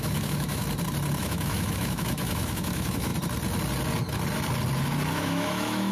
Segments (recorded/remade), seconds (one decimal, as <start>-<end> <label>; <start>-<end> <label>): 0.0-0.6 remade; 0.6-1.2 recorded; 1.2-3.1 remade; 3.1-5.1 recorded; 5.1-5.9 remade